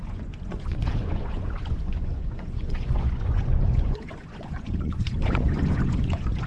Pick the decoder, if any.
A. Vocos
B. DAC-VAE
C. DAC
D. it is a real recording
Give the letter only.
A